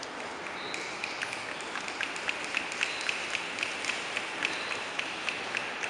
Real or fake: real